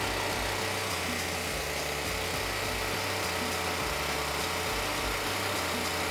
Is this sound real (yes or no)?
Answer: yes